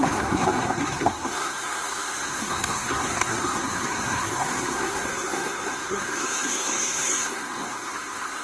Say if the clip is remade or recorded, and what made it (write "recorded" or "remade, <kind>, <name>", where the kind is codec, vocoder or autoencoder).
remade, codec, SNAC